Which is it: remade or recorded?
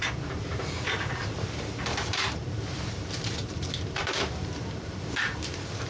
remade